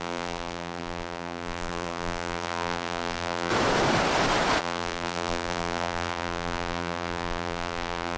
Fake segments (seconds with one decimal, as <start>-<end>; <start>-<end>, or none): 0.0-3.5; 4.6-8.2

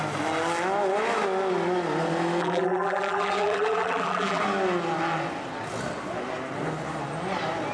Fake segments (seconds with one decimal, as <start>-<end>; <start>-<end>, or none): 2.4-4.4

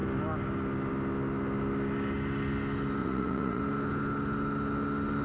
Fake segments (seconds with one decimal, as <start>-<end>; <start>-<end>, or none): 3.0-3.6

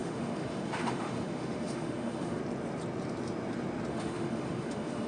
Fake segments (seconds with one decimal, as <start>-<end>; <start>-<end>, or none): 0.0-2.4; 3.9-5.1

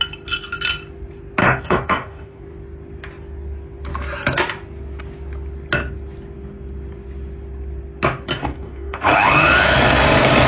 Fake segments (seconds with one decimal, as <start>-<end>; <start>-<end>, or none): 1.4-2.4; 8.4-9.1

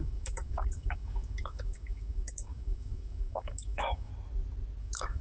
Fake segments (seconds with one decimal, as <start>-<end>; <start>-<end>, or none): 0.0-4.1; 4.8-5.2

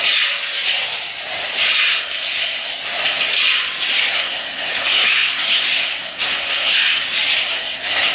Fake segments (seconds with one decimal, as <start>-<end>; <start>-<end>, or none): 1.9-2.8; 4.1-7.0; 7.5-8.1

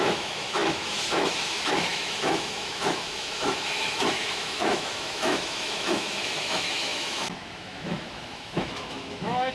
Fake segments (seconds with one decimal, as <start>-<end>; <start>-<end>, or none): 0.0-9.5